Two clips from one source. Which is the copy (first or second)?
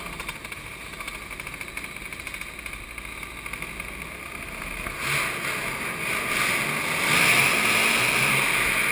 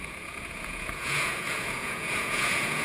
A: second